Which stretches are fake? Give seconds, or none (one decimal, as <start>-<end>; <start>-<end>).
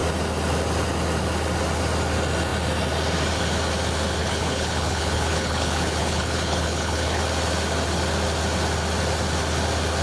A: 4.2-7.2